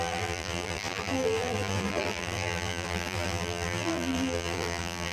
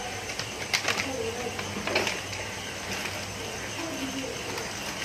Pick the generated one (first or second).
first